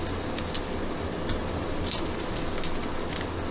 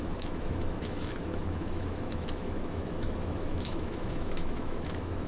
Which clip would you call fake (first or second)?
second